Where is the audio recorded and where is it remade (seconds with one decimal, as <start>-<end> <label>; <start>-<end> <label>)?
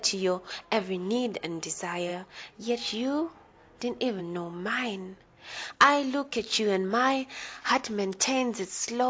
0.0-9.1 recorded